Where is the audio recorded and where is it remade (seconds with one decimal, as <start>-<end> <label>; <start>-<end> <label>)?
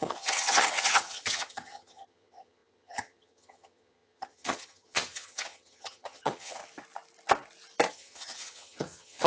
0.0-6.6 remade; 6.6-7.9 recorded; 7.9-9.3 remade